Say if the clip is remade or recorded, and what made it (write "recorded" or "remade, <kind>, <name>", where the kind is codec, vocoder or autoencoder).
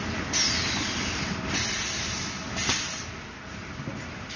recorded